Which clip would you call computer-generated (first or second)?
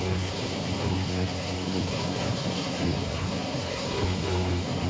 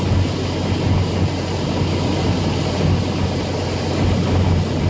first